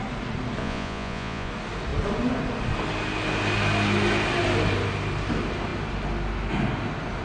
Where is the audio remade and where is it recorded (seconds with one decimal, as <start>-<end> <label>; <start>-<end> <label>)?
0.0-0.6 recorded; 0.6-1.5 remade; 1.5-7.2 recorded